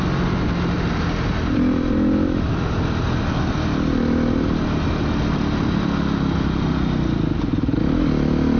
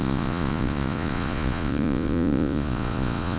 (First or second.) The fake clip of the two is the second